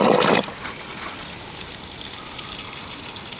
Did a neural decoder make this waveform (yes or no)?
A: no